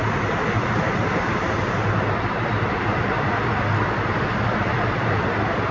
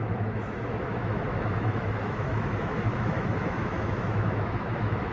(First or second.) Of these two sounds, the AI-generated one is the second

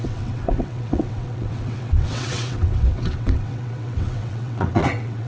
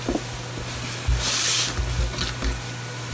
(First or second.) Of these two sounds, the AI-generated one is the first